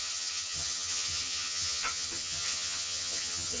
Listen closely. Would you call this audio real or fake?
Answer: fake